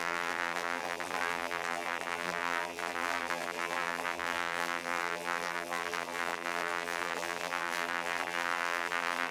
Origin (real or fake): fake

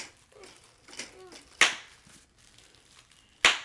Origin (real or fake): real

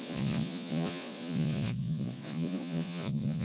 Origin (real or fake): fake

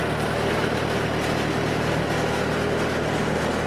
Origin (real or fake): real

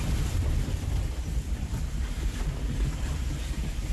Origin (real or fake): fake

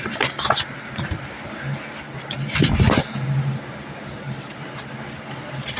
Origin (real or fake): real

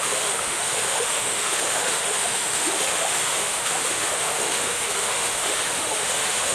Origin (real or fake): fake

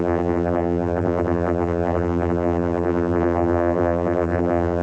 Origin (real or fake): fake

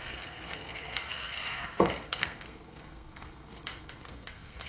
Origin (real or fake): fake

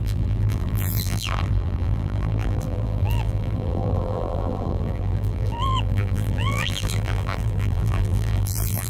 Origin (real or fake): fake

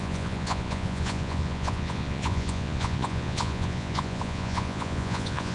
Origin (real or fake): fake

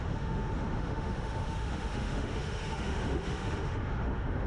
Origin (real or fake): fake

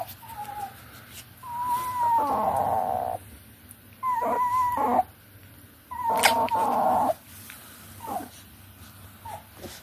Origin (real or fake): real